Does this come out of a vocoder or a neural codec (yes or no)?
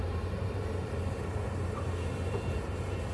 yes